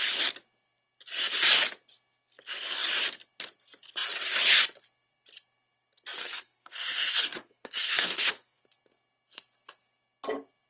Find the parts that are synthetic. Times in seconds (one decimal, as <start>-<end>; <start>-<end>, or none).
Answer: 6.2-8.6